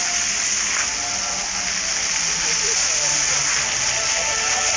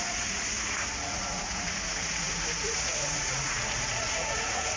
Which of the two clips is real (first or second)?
first